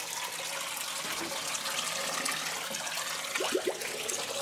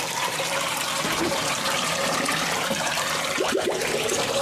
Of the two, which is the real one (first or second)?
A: first